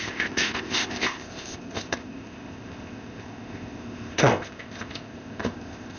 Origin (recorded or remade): remade